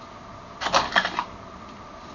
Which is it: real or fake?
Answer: real